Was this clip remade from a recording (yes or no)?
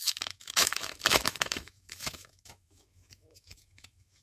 yes